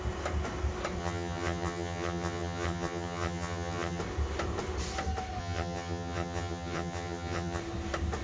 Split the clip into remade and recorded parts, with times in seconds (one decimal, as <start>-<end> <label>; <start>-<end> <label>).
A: 0.0-1.0 recorded; 1.0-4.0 remade; 4.0-5.4 recorded; 5.4-7.6 remade; 7.6-8.2 recorded